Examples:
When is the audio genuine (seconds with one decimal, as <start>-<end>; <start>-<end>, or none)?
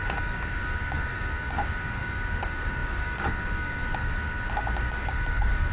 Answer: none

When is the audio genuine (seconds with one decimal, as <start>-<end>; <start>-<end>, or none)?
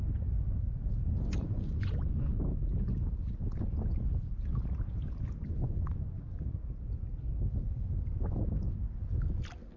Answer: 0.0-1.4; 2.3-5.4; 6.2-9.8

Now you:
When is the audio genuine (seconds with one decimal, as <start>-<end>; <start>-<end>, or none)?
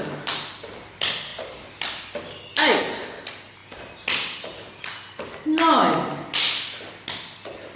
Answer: 0.0-7.8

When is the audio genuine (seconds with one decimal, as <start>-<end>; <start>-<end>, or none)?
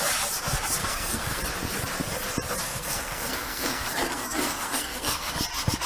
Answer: 0.0-0.8; 1.4-2.6; 5.3-5.9